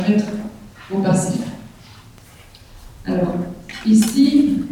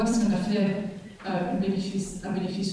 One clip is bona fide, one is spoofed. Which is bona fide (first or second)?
first